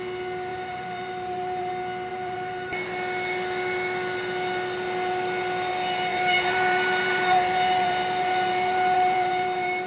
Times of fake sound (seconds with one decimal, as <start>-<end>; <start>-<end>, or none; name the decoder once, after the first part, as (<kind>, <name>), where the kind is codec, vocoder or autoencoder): 0.5-1.7 (vocoder, BigVGAN v2); 2.1-2.7; 6.1-9.9

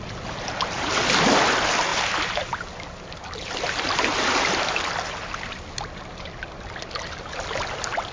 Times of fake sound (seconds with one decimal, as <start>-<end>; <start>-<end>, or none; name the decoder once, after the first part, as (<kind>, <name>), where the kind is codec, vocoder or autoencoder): none

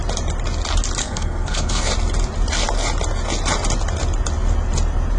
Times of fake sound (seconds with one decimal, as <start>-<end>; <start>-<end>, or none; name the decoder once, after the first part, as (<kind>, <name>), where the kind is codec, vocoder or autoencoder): 1.0-1.9 (codec, SNAC)

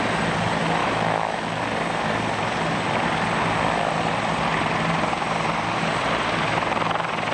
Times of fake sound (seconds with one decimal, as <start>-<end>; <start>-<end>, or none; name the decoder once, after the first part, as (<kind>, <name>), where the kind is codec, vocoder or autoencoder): 0.8-1.6 (autoencoder, DAC-VAE)

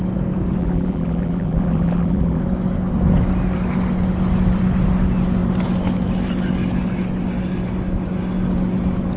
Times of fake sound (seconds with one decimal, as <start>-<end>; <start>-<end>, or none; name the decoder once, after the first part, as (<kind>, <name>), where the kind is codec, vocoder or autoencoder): 0.6-2.4 (vocoder, BigVGAN v2)